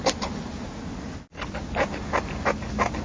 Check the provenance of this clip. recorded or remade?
recorded